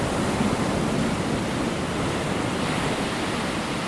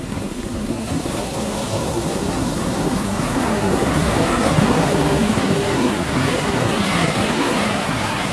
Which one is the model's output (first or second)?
second